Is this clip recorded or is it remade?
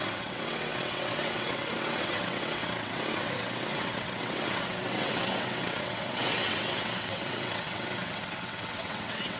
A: remade